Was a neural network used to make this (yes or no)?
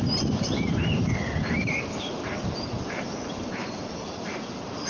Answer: yes